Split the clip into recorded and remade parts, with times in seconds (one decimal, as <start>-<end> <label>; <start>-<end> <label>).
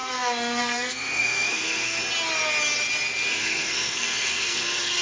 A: 0.0-2.0 remade; 2.0-3.4 recorded; 3.4-5.0 remade